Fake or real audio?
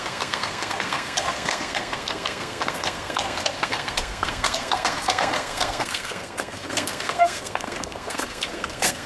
fake